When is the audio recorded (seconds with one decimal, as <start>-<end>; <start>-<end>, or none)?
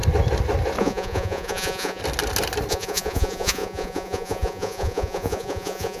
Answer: 0.0-0.8; 2.0-2.7